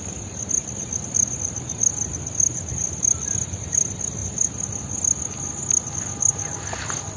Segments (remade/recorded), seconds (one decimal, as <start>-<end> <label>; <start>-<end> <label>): 0.0-7.2 recorded